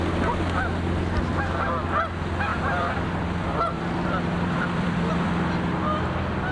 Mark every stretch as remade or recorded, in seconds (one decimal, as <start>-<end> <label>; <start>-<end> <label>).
0.0-2.5 recorded; 2.5-5.3 remade; 5.3-6.5 recorded